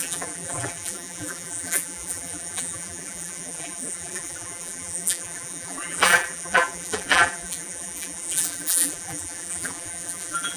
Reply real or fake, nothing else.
fake